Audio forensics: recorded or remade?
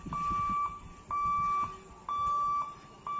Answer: recorded